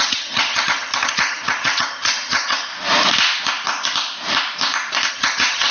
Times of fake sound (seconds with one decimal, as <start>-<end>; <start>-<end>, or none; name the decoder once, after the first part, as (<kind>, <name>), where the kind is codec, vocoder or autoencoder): 0.0-2.7 (vocoder, HiFi-GAN); 5.1-5.7